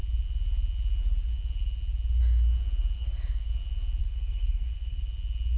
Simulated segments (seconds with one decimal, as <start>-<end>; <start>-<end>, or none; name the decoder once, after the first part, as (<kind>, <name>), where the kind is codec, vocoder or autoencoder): 3.0-3.5 (codec, SNAC); 4.0-5.0

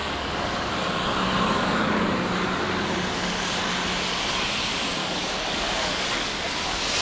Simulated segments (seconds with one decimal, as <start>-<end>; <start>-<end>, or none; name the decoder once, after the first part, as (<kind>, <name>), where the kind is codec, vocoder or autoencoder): 0.0-3.7 (codec, DAC); 5.0-6.4

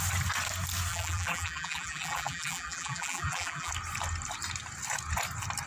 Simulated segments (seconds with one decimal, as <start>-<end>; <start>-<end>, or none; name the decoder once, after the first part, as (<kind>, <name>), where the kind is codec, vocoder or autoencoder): 0.9-3.7 (vocoder, BigVGAN v2)

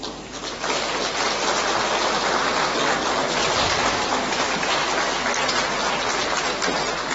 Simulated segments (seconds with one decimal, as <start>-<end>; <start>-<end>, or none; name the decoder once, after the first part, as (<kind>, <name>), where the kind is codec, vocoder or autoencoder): none

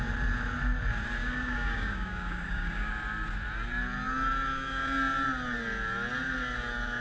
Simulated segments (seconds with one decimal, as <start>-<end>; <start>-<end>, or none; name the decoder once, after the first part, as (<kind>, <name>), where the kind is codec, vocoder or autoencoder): 1.2-2.9 (codec, DAC)

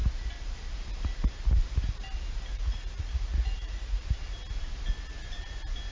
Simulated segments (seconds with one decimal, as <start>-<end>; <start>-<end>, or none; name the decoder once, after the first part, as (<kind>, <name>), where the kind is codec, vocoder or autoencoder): 2.5-4.0 (vocoder, Vocos)

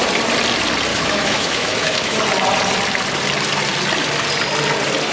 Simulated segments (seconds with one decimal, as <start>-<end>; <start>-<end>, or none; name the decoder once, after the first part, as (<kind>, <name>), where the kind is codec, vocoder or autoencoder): 0.9-2.2 (autoencoder, DAC-VAE)